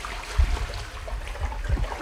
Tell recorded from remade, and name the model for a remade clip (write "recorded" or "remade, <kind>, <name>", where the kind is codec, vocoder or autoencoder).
recorded